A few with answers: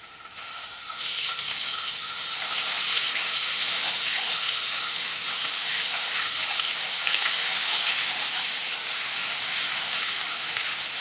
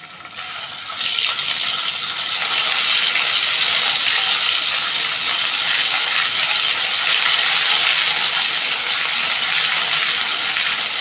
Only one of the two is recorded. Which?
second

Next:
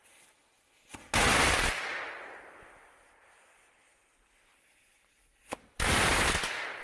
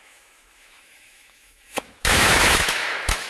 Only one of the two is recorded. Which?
first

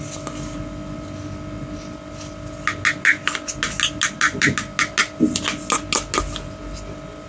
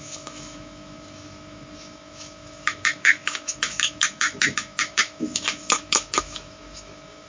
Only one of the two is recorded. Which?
first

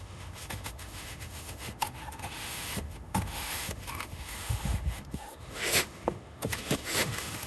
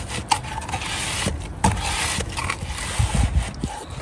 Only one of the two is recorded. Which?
second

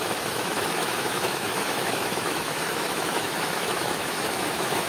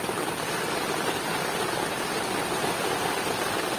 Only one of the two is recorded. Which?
second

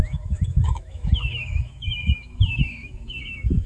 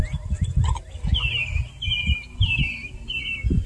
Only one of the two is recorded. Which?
second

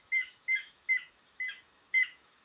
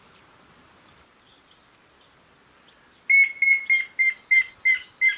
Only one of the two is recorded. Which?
second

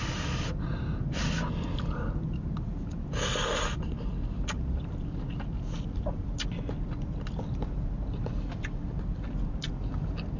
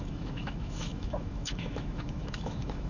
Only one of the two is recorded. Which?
first